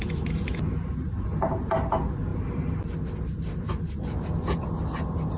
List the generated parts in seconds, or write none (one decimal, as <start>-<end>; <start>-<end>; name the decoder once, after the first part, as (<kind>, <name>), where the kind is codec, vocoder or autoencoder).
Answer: none